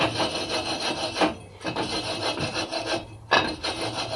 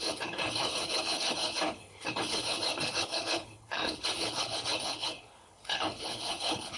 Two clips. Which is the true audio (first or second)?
first